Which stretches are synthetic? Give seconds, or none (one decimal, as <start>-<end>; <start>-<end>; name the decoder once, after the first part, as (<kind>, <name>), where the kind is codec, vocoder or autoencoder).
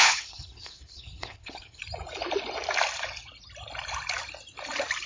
0.0-1.8 (codec, HILCodec)